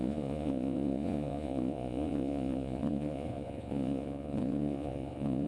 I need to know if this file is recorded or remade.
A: remade